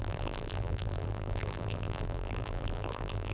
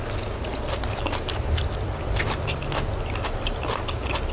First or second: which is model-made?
first